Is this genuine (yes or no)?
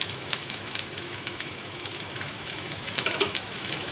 no